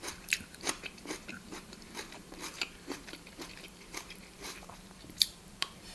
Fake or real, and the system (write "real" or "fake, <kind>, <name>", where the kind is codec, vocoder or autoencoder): fake, vocoder, BigVGAN v2